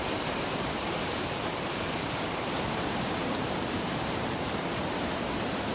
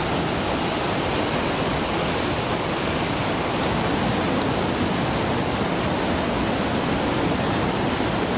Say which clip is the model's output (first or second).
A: first